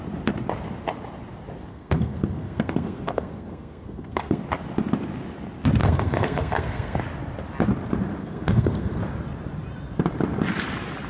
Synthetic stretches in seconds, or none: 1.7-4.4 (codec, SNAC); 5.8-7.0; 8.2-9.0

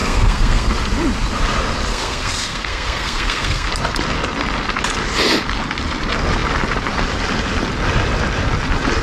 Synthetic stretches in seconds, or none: 0.0-0.7 (codec, SNAC); 1.9-3.7

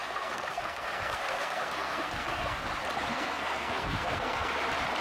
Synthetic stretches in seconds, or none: 0.0-2.6 (codec, SNAC); 3.1-4.5

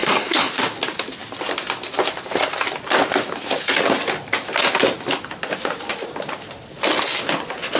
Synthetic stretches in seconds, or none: 0.0-0.5 (codec, SNAC)

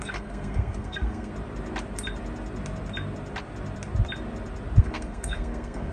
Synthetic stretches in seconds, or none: 0.0-1.3 (codec, SNAC); 4.8-5.9

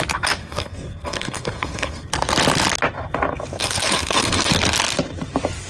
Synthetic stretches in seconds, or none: 0.4-2.1 (codec, SNAC); 3.5-4.5

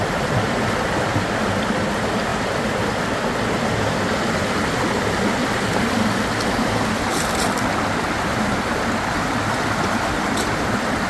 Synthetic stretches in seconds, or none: none